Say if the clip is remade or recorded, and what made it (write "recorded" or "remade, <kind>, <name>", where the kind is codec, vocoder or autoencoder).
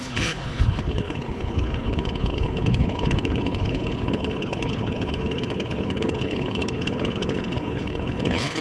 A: remade, codec, HILCodec